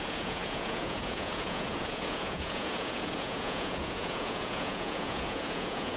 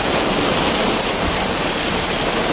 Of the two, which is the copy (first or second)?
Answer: first